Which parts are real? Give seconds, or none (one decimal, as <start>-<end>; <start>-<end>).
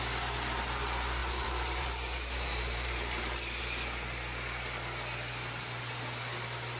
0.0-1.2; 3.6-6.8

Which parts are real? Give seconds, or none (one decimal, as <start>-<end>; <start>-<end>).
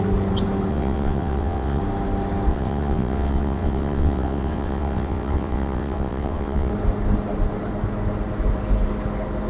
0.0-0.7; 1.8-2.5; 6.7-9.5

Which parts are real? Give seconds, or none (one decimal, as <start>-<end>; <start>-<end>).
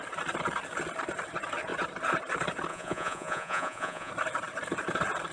0.0-2.7; 4.1-5.3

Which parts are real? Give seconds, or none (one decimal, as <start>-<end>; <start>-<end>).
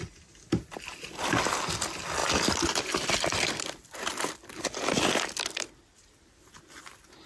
0.0-2.2; 4.0-7.3